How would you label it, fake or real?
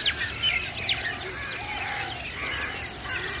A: real